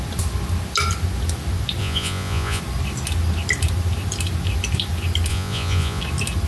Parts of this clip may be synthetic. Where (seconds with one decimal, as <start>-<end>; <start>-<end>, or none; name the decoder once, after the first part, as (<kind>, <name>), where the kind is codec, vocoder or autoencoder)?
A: 1.8-2.6 (vocoder, Vocos); 5.3-6.0